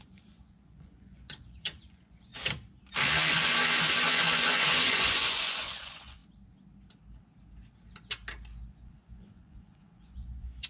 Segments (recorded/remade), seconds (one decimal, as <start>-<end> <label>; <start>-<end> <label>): 0.0-2.3 remade; 2.3-3.3 recorded; 3.3-6.2 remade; 6.2-8.7 recorded; 8.7-10.7 remade